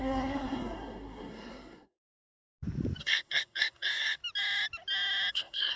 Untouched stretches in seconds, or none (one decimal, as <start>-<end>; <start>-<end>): 2.3-3.0; 4.2-5.3